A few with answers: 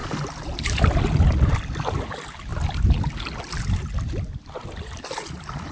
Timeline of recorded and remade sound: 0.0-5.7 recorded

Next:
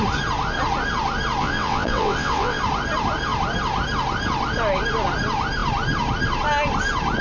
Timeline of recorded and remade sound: 0.0-1.4 recorded; 1.4-2.6 remade; 2.6-7.2 recorded

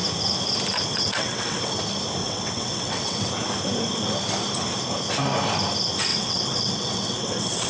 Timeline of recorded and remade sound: 0.0-0.9 recorded; 0.9-1.8 remade; 1.8-2.2 recorded; 2.2-3.3 remade; 3.3-6.1 recorded; 6.1-7.7 remade

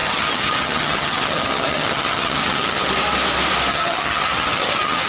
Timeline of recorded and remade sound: 0.0-2.9 remade; 2.9-3.7 recorded; 3.7-5.1 remade

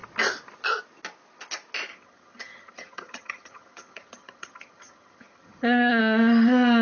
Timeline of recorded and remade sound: 0.0-1.9 recorded; 1.9-6.0 remade; 6.0-6.8 recorded

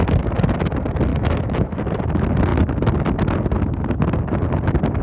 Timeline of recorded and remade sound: 0.0-1.1 recorded; 1.1-1.8 remade; 1.8-5.0 recorded